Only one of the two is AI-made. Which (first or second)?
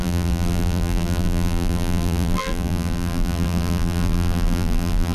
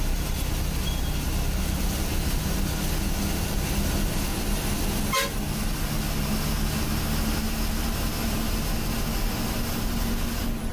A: first